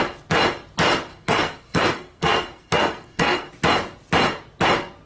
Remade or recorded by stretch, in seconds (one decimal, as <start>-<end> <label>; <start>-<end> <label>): 0.0-1.1 recorded; 1.1-3.5 remade; 3.5-5.1 recorded